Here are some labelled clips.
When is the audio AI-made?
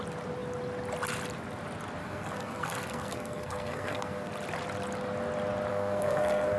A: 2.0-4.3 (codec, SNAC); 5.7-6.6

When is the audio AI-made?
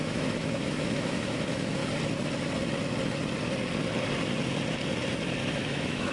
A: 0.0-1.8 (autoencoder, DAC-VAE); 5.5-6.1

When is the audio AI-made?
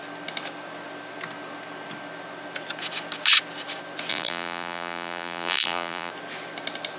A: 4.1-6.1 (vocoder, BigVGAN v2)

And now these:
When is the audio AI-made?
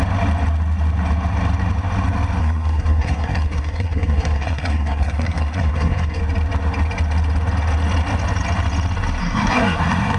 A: 2.4-6.2 (codec, SNAC); 9.2-10.2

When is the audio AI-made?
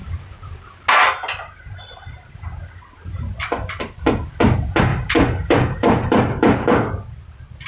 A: 4.9-6.9 (vocoder, BigVGAN v2)